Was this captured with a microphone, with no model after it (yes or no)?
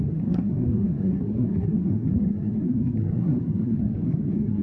no